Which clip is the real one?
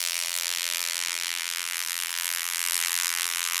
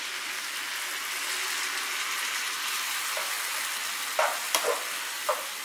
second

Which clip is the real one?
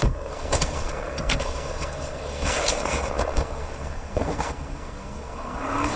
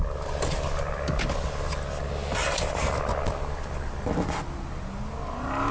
second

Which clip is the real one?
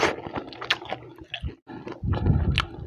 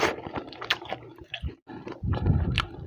first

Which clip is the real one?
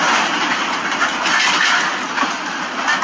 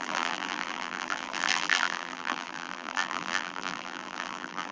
first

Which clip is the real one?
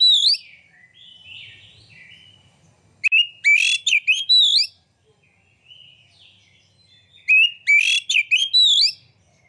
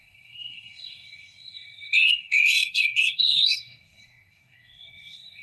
first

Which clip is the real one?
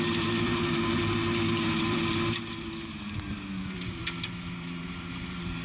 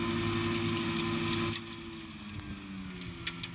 second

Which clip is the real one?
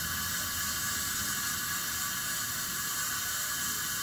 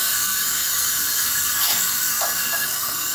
first